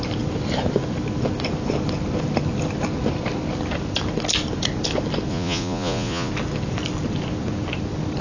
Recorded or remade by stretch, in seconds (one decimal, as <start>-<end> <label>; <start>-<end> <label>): 0.0-5.3 recorded; 5.3-6.3 remade; 6.3-8.2 recorded